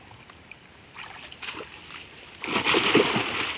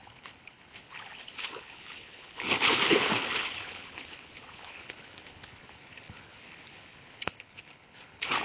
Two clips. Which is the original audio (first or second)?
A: first